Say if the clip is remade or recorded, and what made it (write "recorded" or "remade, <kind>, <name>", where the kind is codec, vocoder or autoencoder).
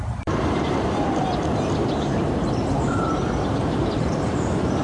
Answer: remade, vocoder, BigVGAN v2